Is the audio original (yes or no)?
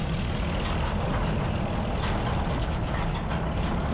yes